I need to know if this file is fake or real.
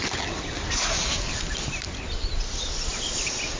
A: real